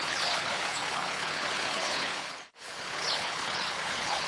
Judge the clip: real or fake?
fake